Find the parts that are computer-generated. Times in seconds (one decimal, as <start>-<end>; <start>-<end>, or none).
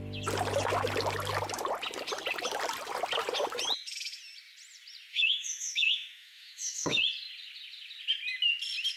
5.1-7.0